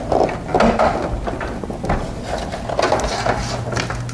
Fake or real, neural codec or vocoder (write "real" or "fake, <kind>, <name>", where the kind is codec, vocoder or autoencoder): real